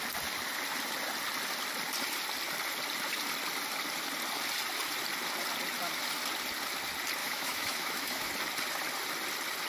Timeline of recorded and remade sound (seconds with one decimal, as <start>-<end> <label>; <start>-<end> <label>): 0.0-7.2 recorded; 7.2-8.3 remade; 8.3-9.7 recorded